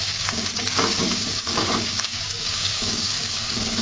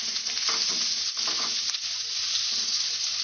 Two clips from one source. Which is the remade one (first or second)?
first